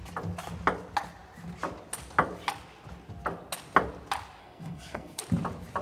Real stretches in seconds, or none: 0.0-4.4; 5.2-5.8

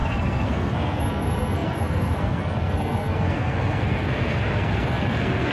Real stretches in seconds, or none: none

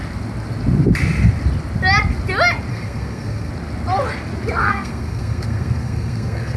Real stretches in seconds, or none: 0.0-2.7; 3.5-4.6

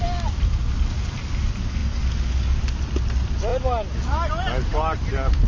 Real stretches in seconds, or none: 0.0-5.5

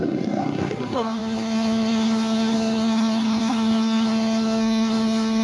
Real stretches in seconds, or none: none

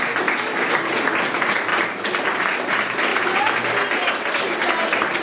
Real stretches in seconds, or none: 0.0-5.2

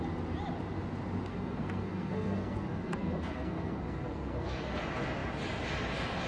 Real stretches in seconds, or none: 0.0-1.3; 4.8-6.3